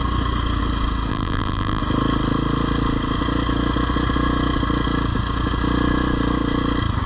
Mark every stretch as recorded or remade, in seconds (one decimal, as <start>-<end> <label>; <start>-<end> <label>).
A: 0.0-1.1 recorded; 1.1-1.8 remade; 1.8-7.1 recorded